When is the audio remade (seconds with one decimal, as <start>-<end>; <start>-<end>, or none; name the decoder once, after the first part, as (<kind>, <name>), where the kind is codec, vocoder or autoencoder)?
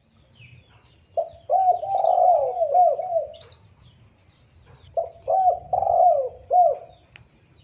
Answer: none